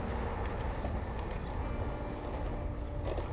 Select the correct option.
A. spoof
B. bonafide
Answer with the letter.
B